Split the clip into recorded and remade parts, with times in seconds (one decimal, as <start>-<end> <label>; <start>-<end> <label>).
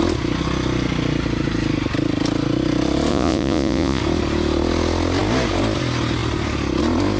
0.0-3.1 recorded; 3.1-4.0 remade; 4.0-7.2 recorded